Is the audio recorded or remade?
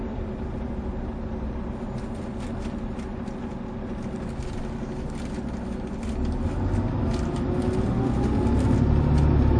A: recorded